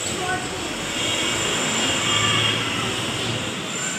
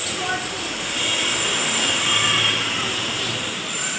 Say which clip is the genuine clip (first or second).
first